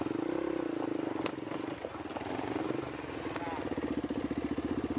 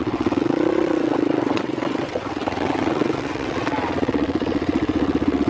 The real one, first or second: first